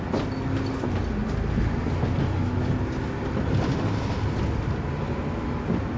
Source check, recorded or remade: recorded